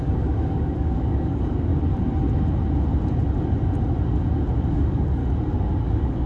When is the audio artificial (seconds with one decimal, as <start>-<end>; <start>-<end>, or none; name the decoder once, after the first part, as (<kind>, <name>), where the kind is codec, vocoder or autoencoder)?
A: 0.0-1.7 (codec, DAC); 4.7-5.2; 5.8-6.3